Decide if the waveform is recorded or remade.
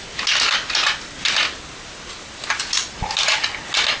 recorded